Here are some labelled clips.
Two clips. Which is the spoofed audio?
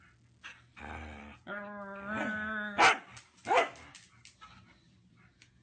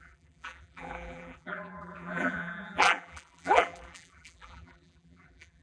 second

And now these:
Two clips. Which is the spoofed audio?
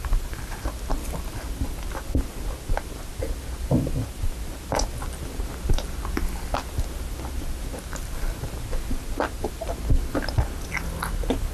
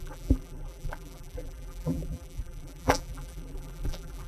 second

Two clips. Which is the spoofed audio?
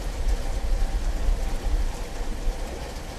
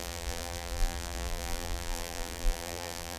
second